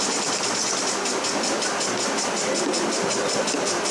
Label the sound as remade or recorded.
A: recorded